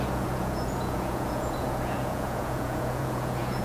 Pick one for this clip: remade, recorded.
remade